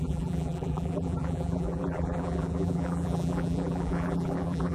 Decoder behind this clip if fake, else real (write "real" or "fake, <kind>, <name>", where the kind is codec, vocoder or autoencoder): fake, vocoder, BigVGAN v2